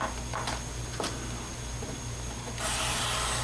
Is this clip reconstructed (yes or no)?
no